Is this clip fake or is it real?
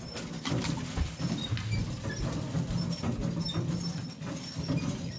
real